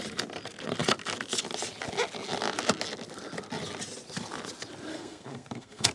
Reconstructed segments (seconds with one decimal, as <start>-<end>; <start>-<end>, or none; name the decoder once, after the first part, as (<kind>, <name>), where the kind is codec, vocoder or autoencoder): 4.9-5.9 (codec, SNAC)

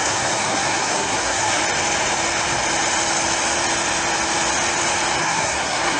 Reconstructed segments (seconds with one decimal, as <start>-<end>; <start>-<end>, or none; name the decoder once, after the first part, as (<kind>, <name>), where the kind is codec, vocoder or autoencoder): 0.0-1.6 (codec, SNAC); 5.2-6.0

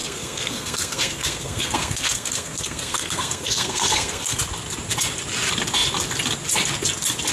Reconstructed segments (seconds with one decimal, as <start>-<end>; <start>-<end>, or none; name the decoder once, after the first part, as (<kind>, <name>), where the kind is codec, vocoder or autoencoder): 0.0-4.4 (codec, SNAC)

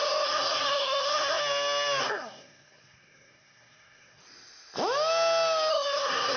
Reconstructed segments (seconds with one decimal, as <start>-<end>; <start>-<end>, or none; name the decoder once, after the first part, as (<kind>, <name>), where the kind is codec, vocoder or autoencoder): 0.0-1.4 (codec, SNAC); 2.0-4.2; 5.7-6.4

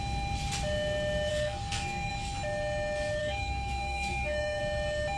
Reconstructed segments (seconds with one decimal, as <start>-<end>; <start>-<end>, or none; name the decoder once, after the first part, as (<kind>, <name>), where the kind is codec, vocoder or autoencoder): 1.3-2.1 (codec, SNAC); 3.2-4.6